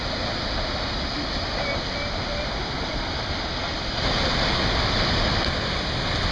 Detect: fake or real real